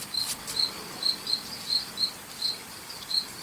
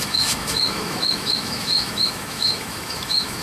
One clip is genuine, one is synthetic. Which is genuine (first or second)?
first